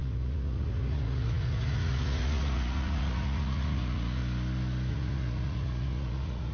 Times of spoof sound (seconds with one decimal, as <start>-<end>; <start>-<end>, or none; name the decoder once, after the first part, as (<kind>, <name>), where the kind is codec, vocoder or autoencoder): 0.0-4.2 (vocoder, Vocos); 4.9-6.5

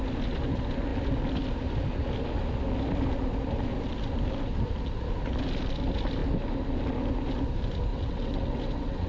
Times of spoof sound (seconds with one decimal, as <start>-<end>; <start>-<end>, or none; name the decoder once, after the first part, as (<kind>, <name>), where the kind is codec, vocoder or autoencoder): 7.9-9.1 (vocoder, WaveNeXt)

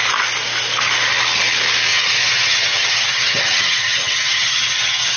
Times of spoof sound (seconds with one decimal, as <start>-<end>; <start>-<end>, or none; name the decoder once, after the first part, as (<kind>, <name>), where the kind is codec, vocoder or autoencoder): 1.9-5.2 (vocoder, HiFi-GAN)

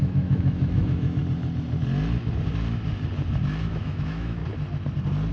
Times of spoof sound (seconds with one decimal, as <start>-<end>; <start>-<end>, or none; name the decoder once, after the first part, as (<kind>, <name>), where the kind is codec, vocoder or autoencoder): 0.0-1.2 (autoencoder, DAC-VAE); 3.6-4.4

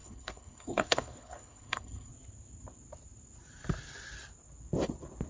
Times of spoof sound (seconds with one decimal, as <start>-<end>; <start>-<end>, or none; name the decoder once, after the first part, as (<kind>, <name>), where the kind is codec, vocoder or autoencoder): 0.0-2.1 (codec, HILCodec)

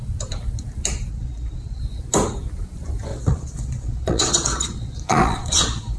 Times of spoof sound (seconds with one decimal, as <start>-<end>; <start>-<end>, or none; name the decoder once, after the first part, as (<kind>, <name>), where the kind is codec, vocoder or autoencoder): 1.1-1.8 (vocoder, Vocos); 3.1-6.0

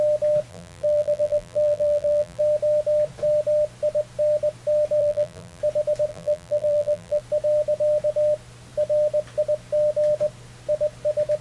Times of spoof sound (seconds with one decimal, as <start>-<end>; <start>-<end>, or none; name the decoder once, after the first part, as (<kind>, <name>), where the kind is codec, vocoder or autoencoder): 0.5-2.4 (vocoder, BigVGAN v2); 5.0-5.6; 6.1-7.2

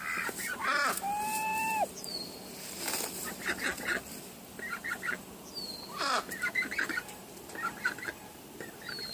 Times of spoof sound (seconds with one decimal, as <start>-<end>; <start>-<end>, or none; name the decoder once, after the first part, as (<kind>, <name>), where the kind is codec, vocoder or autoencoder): none